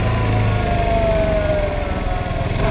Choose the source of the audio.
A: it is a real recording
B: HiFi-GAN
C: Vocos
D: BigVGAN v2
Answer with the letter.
A